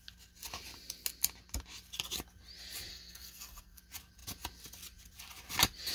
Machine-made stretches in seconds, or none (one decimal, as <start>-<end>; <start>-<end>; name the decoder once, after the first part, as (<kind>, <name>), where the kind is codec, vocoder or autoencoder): 2.9-3.8 (codec, SNAC)

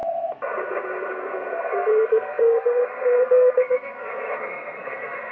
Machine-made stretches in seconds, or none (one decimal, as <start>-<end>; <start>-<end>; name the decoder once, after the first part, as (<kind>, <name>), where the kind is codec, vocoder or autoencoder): 1.1-5.3 (codec, SNAC)

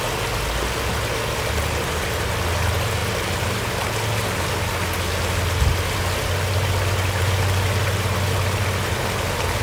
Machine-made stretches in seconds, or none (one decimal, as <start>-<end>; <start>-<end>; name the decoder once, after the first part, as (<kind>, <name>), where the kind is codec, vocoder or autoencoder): none

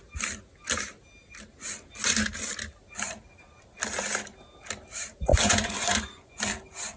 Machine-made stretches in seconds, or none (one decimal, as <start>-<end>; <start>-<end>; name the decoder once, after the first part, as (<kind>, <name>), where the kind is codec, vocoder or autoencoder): 5.3-6.4 (vocoder, Vocos)

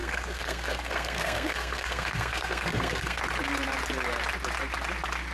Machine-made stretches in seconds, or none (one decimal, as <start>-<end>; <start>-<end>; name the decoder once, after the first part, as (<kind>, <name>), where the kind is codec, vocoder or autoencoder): 0.0-3.2 (codec, SNAC)

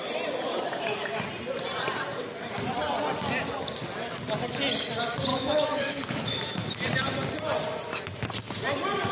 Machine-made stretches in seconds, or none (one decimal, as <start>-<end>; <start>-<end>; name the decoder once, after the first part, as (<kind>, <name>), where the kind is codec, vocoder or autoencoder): 5.3-6.5 (autoencoder, DAC-VAE)

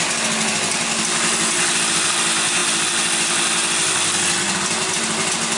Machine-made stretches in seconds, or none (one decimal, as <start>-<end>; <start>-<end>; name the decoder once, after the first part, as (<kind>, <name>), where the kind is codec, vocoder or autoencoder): none